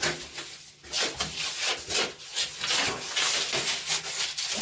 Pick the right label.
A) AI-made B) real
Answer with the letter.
B